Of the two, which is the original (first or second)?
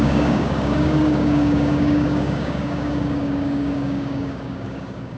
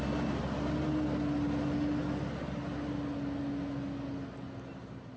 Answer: second